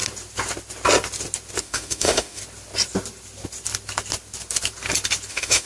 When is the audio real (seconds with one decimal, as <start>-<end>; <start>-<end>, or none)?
0.0-1.6; 2.4-5.3